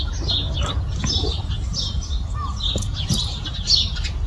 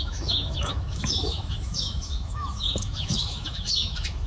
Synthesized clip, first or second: second